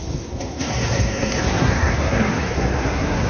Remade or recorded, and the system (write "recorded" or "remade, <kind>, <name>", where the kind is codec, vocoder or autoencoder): remade, codec, SNAC